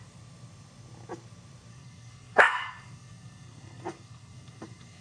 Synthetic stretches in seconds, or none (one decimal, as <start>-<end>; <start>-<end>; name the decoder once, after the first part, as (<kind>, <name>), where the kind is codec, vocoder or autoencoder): 1.7-5.0 (codec, SNAC)